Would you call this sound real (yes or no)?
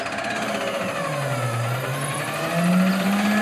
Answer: yes